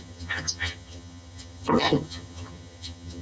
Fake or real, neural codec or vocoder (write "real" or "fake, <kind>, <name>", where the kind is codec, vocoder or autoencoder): fake, vocoder, HiFi-GAN